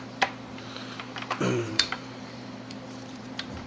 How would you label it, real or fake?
fake